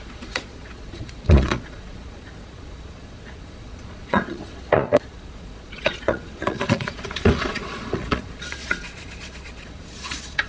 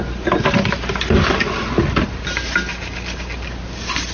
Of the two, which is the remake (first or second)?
first